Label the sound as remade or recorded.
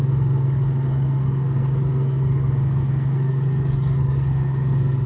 remade